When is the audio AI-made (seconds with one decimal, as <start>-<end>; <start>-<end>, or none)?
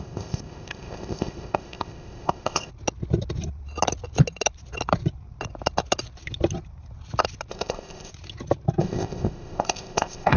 0.0-2.7; 7.5-8.1; 8.8-10.4